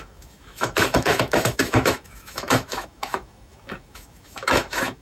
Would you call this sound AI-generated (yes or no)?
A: yes